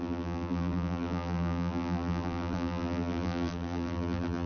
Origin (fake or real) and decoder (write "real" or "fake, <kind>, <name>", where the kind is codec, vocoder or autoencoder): fake, vocoder, BigVGAN v2